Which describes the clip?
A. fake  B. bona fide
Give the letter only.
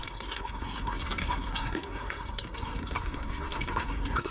A